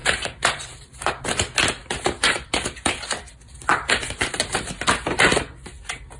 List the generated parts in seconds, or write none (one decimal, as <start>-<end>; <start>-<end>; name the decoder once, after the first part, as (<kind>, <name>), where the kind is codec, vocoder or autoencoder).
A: 0.0-1.1 (vocoder, BigVGAN v2); 1.8-3.0; 3.7-4.7